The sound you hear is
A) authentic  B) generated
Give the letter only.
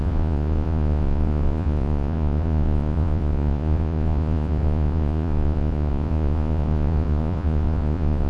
B